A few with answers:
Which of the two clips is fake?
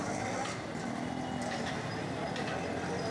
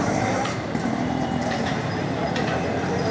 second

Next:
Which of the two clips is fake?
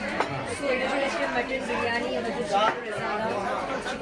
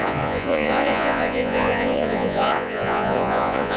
second